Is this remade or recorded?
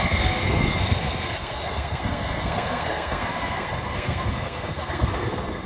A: remade